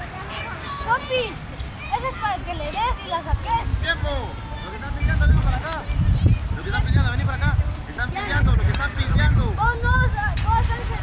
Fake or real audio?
real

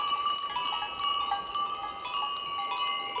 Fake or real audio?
real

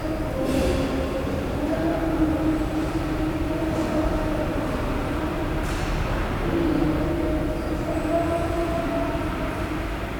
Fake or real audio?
real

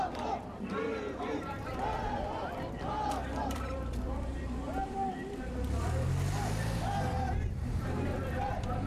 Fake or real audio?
fake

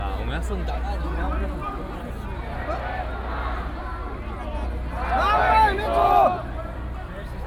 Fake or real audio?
real